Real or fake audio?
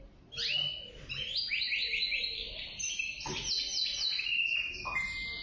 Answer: real